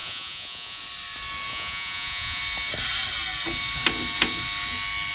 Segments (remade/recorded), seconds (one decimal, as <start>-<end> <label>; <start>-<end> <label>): 0.0-0.8 remade; 0.8-1.5 recorded; 1.5-2.4 remade; 2.4-5.1 recorded